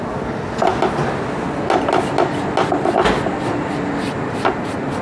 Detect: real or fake real